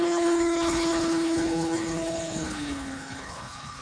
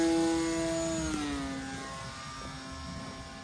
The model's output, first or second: first